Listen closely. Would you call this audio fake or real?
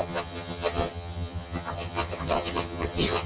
fake